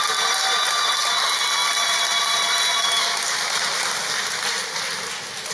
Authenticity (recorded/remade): recorded